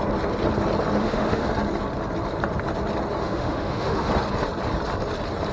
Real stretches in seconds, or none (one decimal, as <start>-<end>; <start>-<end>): 0.0-1.0; 1.5-3.2; 4.1-5.5